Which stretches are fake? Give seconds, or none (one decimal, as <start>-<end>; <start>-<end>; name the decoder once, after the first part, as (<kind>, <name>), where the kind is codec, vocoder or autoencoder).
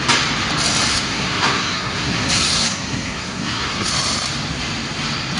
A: 0.9-3.9 (codec, SNAC)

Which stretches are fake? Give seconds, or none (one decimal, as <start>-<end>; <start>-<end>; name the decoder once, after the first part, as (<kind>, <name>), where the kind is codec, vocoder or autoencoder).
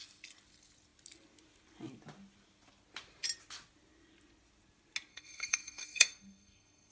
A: 5.1-6.9 (codec, SNAC)